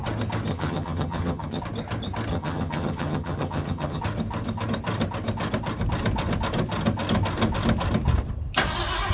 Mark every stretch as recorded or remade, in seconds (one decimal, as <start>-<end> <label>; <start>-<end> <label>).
0.0-0.5 recorded; 0.5-1.6 remade; 1.6-2.3 recorded; 2.3-4.0 remade; 4.0-9.1 recorded